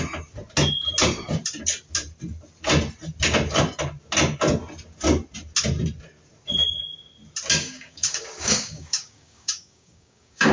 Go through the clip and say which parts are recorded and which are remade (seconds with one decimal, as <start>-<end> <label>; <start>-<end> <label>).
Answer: 0.0-7.6 recorded; 7.6-10.5 remade